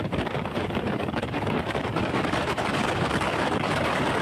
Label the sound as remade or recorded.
remade